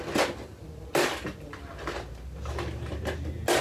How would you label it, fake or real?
real